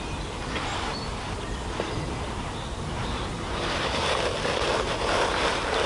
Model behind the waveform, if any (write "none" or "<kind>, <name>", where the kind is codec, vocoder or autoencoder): none